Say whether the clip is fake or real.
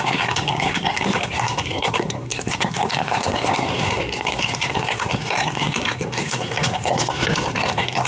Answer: fake